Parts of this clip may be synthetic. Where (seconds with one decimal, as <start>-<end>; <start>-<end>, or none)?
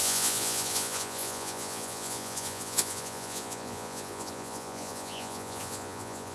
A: 0.0-6.3